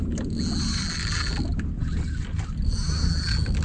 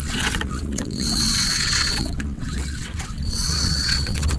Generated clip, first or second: second